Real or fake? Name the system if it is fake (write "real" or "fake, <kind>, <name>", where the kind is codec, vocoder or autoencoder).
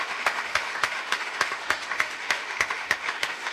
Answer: fake, autoencoder, DAC-VAE